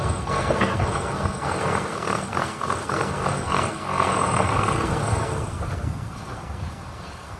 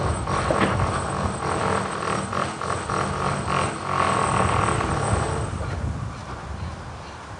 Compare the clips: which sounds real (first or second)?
second